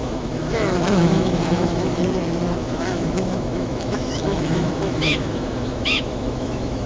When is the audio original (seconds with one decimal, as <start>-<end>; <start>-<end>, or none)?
2.0-2.6